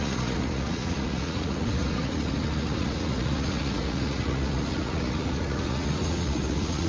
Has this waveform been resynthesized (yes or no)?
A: yes